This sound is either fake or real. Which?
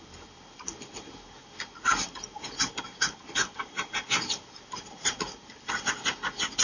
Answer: real